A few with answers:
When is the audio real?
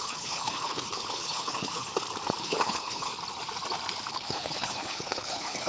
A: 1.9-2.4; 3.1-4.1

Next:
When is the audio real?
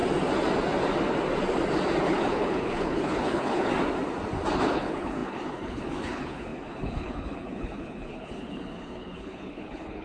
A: 0.0-2.0; 3.7-4.6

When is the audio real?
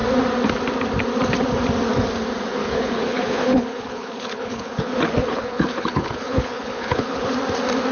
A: 0.0-2.6; 7.3-7.9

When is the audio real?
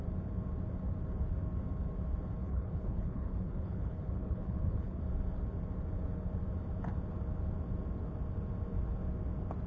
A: 0.0-2.4; 5.0-9.7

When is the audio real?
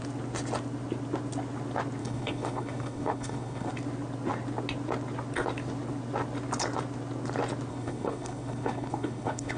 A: 0.0-2.0; 3.7-7.7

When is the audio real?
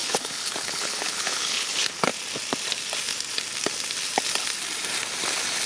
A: 2.1-5.7